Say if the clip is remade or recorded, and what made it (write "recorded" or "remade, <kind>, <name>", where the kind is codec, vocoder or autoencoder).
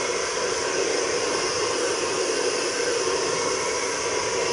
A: recorded